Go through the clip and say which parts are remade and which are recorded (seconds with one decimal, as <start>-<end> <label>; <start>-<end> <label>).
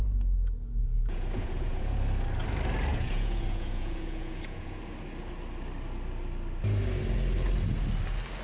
0.0-0.8 recorded; 0.8-2.0 remade; 2.0-2.9 recorded; 2.9-4.8 remade; 4.8-8.4 recorded